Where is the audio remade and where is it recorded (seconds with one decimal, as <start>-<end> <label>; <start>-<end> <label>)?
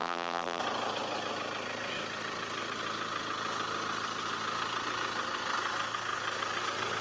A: 0.0-0.6 remade; 0.6-7.0 recorded